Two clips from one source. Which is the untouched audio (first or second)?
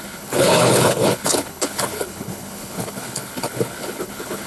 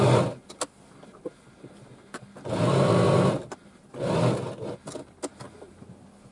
second